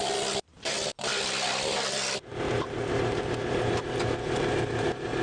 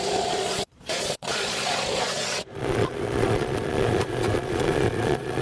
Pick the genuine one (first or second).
first